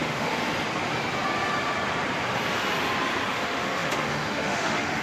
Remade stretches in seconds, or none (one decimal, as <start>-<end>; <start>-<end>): 0.0-0.4; 3.3-5.0